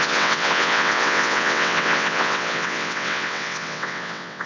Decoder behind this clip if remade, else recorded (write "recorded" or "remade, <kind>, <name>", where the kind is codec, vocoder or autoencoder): remade, vocoder, WaveNeXt